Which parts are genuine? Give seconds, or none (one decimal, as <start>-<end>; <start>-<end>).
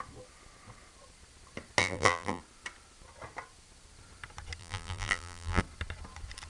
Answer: 0.0-1.8; 2.4-4.6; 5.6-6.5